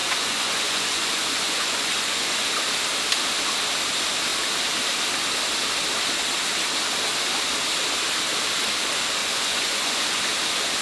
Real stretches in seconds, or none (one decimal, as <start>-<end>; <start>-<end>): 2.5-9.2; 10.2-10.8